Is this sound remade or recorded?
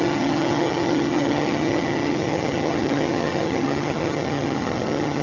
remade